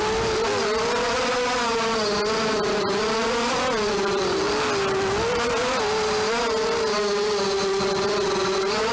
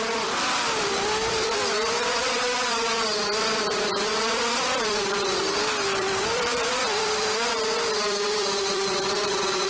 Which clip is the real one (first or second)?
first